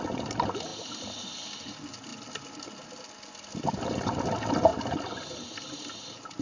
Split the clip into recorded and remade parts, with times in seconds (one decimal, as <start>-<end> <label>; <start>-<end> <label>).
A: 0.0-6.4 recorded